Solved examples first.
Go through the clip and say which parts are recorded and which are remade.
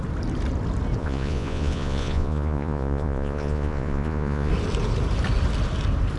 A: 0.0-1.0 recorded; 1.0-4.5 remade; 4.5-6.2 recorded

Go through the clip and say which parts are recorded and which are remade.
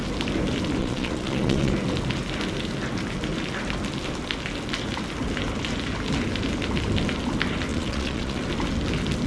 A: 0.0-0.8 recorded; 0.8-1.7 remade; 1.7-7.7 recorded; 7.7-8.4 remade; 8.4-9.3 recorded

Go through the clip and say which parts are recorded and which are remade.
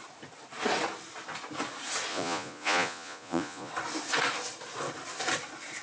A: 0.0-2.1 recorded; 2.1-3.7 remade; 3.7-5.8 recorded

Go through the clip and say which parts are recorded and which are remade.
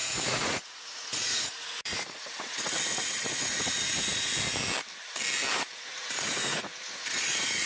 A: 0.0-4.3 remade; 4.3-5.5 recorded; 5.5-7.7 remade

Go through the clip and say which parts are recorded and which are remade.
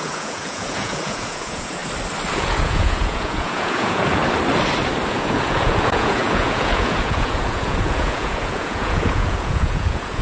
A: 0.0-1.8 remade; 1.8-2.3 recorded; 2.3-4.2 remade; 4.2-5.1 recorded; 5.1-10.2 remade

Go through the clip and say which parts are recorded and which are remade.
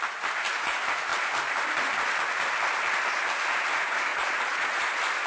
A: 0.0-4.1 recorded; 4.1-4.7 remade; 4.7-5.3 recorded